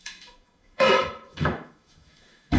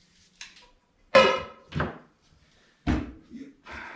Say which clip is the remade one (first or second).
first